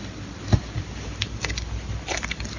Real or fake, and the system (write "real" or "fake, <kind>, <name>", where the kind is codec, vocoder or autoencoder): fake, vocoder, BigVGAN v2